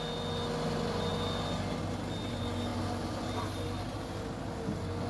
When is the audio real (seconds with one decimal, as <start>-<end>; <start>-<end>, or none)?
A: 0.0-5.1